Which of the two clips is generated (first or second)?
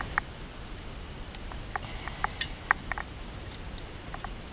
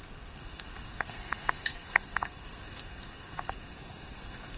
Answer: second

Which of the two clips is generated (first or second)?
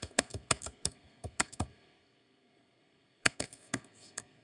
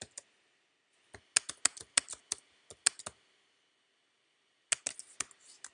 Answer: first